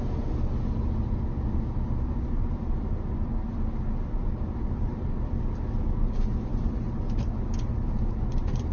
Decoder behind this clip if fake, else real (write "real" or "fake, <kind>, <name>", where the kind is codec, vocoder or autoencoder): real